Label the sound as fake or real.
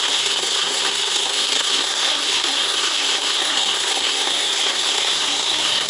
fake